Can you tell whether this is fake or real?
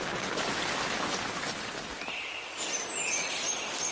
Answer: real